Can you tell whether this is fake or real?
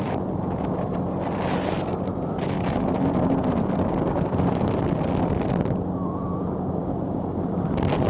fake